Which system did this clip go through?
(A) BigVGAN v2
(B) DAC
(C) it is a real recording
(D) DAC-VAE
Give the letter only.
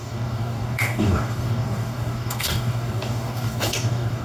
B